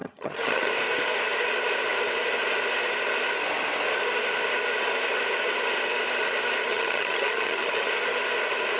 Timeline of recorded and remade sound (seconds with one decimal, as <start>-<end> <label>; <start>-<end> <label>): 0.0-0.7 remade; 0.7-6.7 recorded; 6.7-7.9 remade; 7.9-8.8 recorded